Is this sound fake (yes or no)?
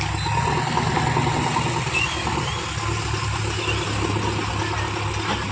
no